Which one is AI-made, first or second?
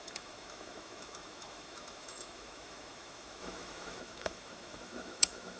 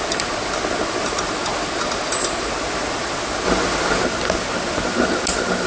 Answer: first